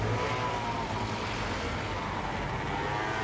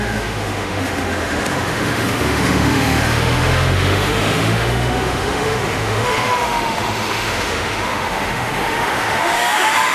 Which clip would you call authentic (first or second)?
first